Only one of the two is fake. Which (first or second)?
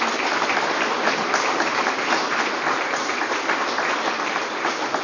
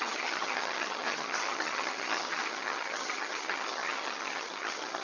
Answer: second